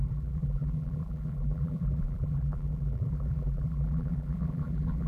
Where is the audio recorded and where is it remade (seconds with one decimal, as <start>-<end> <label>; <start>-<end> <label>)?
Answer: 0.0-5.1 remade